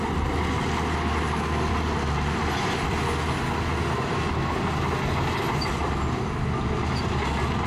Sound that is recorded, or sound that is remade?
recorded